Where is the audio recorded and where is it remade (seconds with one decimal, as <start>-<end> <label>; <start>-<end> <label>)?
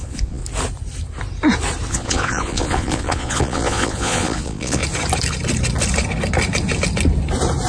0.0-0.4 remade; 0.4-1.9 recorded; 1.9-4.8 remade; 4.8-7.7 recorded